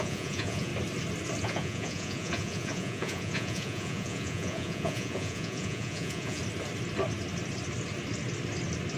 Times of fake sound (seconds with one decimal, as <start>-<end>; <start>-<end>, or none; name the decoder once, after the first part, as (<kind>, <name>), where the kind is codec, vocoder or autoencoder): 0.0-0.7 (vocoder, Vocos); 1.4-6.4